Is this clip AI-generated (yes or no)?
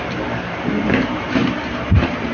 yes